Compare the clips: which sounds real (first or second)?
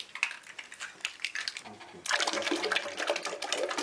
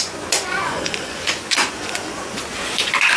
first